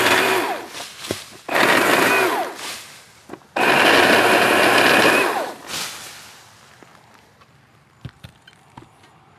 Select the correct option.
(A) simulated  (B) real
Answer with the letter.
B